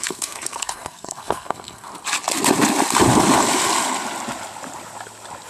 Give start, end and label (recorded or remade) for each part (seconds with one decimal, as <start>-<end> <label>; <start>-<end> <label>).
0.0-1.9 remade; 1.9-5.5 recorded